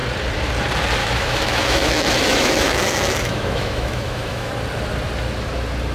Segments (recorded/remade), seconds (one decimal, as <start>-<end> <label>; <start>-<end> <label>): 0.0-1.0 recorded; 1.0-4.5 remade; 4.5-5.9 recorded